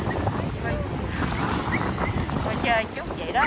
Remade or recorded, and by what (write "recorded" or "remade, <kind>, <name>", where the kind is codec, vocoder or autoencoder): recorded